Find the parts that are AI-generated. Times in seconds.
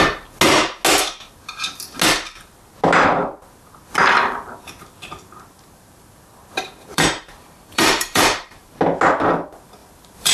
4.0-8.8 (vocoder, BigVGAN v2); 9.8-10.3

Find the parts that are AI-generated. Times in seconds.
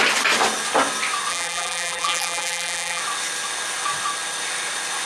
1.3-3.0 (vocoder, BigVGAN v2)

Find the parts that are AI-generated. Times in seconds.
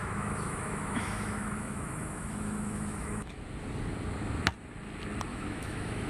0.0-3.4 (autoencoder, DAC-VAE); 5.3-6.1